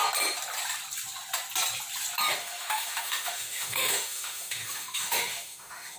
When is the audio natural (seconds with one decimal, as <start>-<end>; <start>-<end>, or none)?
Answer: 0.0-2.4